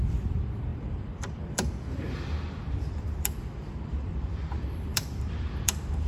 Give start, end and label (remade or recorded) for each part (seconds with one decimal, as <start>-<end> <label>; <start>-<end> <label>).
0.0-6.1 remade